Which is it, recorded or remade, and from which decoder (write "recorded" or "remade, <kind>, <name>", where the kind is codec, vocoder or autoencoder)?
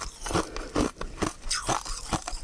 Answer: recorded